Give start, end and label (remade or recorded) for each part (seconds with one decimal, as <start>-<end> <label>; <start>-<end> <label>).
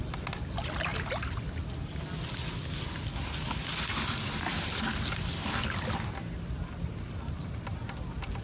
0.0-8.4 recorded